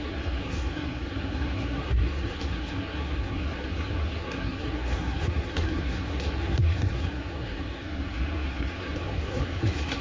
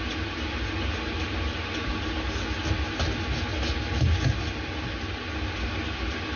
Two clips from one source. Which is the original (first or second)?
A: second